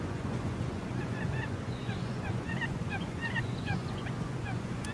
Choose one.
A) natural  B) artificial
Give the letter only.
B